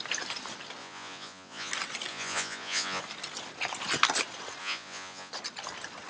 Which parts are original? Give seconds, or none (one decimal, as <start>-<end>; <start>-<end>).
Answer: 0.0-0.8; 1.7-2.1; 3.0-4.6; 5.3-6.1